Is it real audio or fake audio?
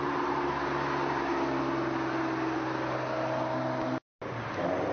real